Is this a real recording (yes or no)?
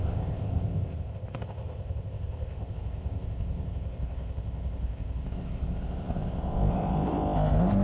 no